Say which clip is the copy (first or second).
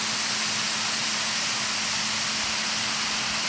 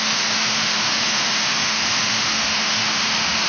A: second